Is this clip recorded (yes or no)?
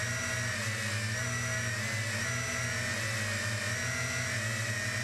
yes